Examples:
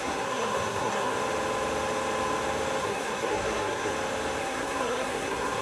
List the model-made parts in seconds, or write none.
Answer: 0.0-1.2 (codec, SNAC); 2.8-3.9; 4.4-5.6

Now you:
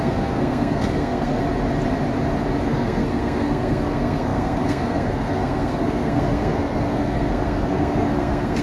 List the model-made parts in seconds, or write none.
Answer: 0.0-1.4 (codec, SNAC); 2.6-8.6